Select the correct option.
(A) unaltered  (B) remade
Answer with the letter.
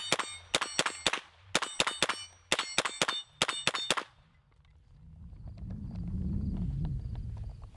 A